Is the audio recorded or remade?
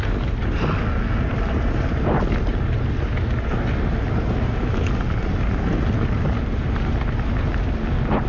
recorded